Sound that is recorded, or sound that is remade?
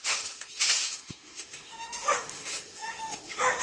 remade